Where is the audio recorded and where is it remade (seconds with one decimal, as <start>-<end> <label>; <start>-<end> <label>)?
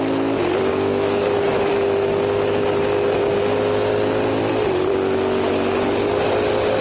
0.0-0.7 recorded; 0.7-1.5 remade; 1.5-6.8 recorded